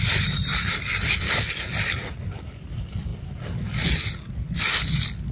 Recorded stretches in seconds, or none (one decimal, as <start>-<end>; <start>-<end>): 0.0-5.3